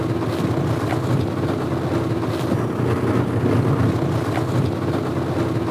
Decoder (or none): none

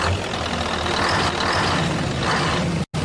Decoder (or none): none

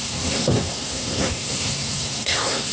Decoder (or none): codec, SNAC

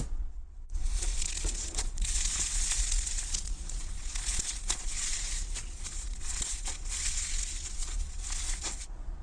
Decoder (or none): vocoder, Vocos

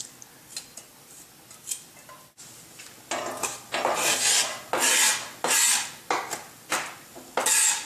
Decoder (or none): none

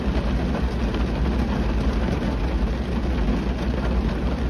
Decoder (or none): none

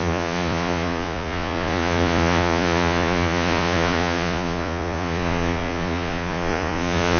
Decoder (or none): vocoder, Vocos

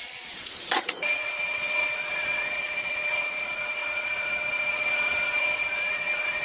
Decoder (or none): vocoder, Vocos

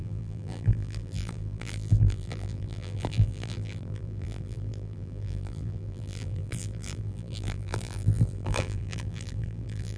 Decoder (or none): vocoder, BigVGAN v2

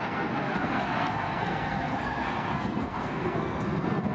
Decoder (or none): codec, SNAC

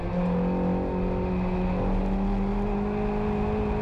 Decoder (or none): none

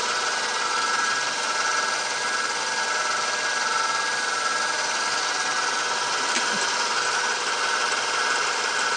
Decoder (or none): none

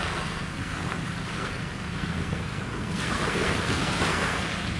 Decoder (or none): codec, SNAC